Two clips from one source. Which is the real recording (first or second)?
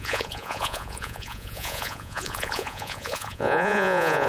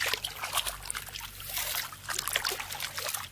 second